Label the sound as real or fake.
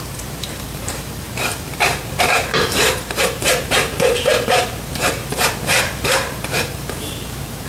fake